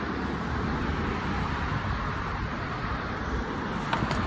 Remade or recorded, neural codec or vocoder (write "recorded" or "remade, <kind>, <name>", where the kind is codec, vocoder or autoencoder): recorded